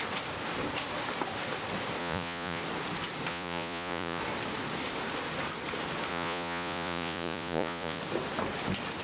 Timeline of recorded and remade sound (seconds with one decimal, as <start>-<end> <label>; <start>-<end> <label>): 0.0-2.0 recorded; 2.0-2.6 remade; 2.6-3.3 recorded; 3.3-4.2 remade; 4.2-6.1 recorded; 6.1-8.0 remade; 8.0-9.0 recorded